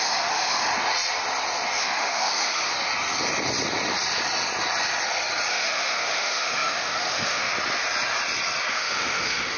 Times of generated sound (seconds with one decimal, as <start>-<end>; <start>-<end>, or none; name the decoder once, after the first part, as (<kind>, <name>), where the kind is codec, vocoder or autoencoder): 0.0-0.7 (autoencoder, DAC-VAE); 1.8-2.7; 5.5-7.5; 8.7-9.6